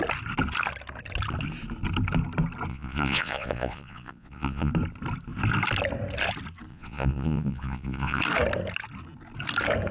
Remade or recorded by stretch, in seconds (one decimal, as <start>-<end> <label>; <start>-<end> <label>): 0.0-2.7 recorded; 2.7-4.7 remade; 4.7-6.7 recorded; 6.7-8.2 remade; 8.2-9.9 recorded